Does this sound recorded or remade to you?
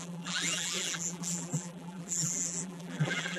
remade